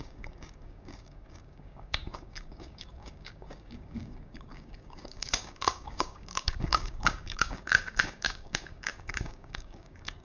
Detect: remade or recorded remade